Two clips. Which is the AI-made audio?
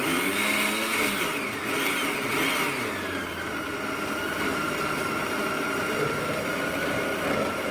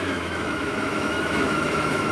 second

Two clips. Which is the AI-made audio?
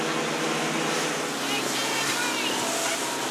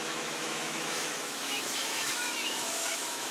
second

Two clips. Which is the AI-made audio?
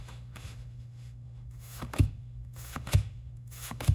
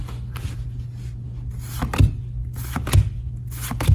first